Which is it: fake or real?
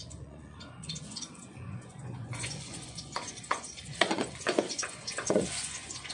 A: fake